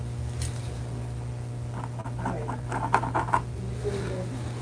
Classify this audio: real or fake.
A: real